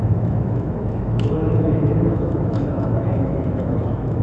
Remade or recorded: remade